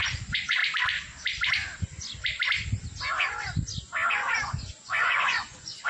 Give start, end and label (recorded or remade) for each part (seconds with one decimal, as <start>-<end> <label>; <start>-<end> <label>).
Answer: 0.0-0.6 remade; 0.6-4.1 recorded; 4.1-5.9 remade